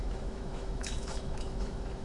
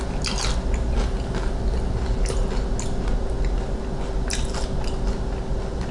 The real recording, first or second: second